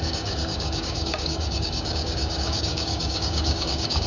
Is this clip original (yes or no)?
no